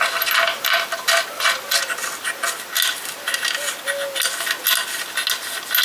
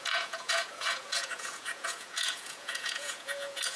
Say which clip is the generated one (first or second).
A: second